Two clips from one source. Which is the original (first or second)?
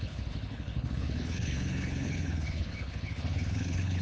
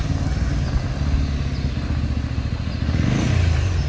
second